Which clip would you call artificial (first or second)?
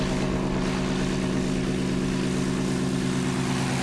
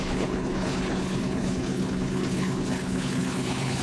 second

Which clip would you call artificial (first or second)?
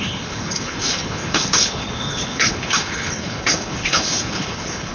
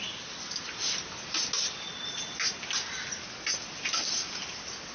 first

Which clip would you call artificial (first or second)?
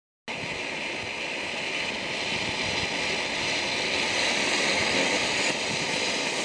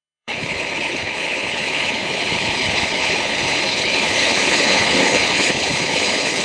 second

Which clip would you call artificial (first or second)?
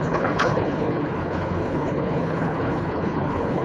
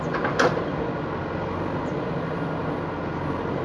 first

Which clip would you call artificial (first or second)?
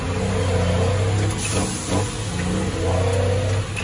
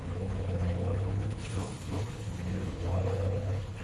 second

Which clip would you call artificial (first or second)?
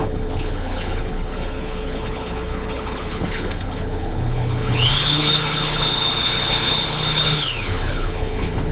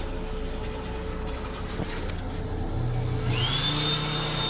first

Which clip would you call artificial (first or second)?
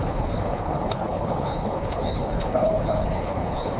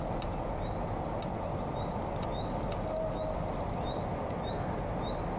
first